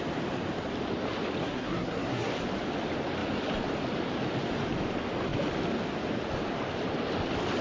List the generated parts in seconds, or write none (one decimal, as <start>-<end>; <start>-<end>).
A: 1.4-2.3